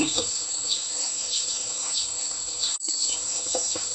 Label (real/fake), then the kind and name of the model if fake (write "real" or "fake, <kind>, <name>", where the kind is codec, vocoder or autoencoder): fake, codec, SNAC